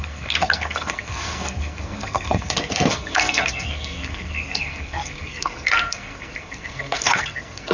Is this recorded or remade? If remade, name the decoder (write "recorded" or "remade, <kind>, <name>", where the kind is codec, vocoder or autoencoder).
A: remade, codec, SNAC